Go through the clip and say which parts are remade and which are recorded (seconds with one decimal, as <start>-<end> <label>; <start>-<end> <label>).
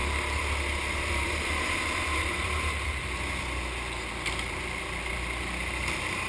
0.0-6.3 remade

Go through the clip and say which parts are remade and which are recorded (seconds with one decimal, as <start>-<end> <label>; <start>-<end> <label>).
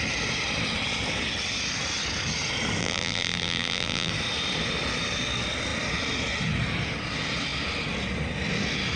0.0-2.8 recorded; 2.8-4.1 remade; 4.1-9.0 recorded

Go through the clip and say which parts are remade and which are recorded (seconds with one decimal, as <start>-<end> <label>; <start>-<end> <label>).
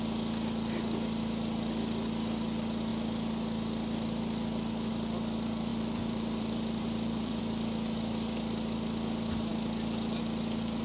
0.0-5.7 recorded; 5.7-7.4 remade; 7.4-10.8 recorded